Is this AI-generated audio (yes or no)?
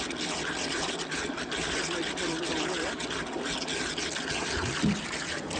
no